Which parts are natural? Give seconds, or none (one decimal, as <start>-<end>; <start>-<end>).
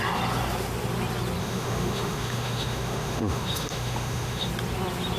0.0-1.4; 4.5-5.2